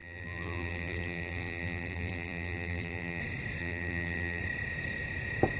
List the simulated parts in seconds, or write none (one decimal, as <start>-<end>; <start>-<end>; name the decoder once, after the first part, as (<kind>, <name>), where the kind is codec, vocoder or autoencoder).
0.0-3.2 (vocoder, BigVGAN v2); 3.6-4.4